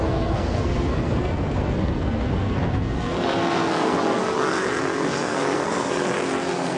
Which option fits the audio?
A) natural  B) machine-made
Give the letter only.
B